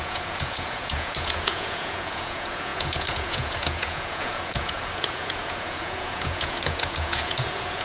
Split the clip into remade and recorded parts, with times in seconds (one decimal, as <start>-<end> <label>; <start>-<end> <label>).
0.0-7.8 remade